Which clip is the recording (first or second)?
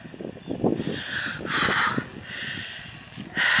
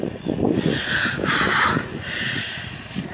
first